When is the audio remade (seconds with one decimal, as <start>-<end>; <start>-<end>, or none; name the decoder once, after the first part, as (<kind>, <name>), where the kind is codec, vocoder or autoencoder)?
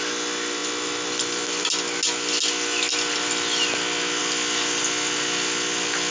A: none